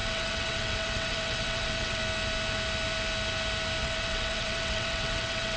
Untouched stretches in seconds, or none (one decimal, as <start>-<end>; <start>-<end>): 2.0-3.8